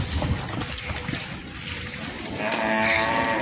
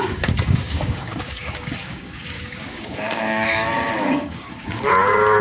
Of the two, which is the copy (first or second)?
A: second